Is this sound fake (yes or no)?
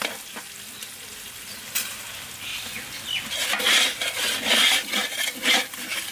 no